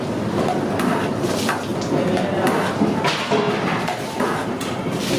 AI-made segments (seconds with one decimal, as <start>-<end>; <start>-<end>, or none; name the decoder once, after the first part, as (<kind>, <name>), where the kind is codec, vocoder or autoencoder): none